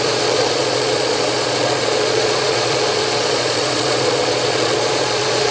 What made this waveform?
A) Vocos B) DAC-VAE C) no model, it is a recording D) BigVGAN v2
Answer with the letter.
A